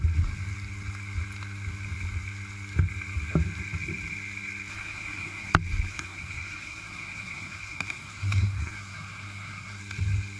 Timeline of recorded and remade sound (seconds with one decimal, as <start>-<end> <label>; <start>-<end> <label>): 0.0-4.7 recorded; 4.7-5.5 remade; 5.5-5.9 recorded; 5.9-9.8 remade; 9.8-10.4 recorded